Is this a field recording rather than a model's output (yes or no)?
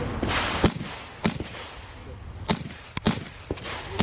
yes